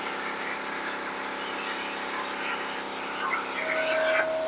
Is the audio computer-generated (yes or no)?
no